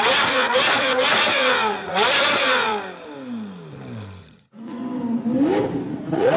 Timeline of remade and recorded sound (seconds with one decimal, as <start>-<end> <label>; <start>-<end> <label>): 0.0-2.7 remade; 2.7-4.2 recorded; 4.2-4.8 remade; 4.8-5.9 recorded; 5.9-6.4 remade